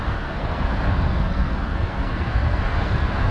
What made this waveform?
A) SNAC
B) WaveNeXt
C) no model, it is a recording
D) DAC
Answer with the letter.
A